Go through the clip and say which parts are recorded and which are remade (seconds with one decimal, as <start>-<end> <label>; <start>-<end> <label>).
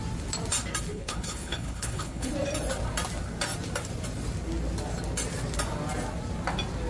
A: 0.0-0.9 recorded; 0.9-2.3 remade; 2.3-6.9 recorded